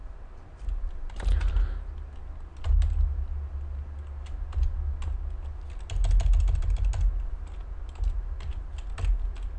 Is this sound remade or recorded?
recorded